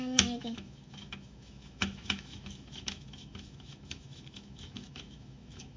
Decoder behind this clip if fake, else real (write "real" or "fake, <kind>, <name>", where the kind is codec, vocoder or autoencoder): fake, autoencoder, DAC-VAE